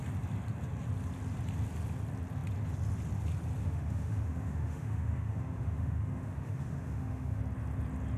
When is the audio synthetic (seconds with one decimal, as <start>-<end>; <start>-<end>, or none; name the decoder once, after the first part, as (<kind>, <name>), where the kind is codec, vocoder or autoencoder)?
3.6-7.4 (autoencoder, DAC-VAE)